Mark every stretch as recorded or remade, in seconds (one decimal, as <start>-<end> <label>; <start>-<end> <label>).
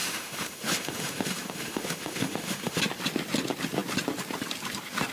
0.0-2.8 remade; 2.8-5.1 recorded